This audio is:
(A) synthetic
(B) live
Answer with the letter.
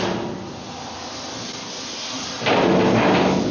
B